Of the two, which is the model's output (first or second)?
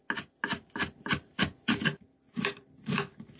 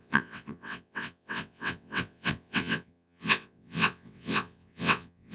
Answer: second